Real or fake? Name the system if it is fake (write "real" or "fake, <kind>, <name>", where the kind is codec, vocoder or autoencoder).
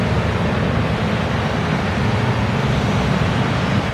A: real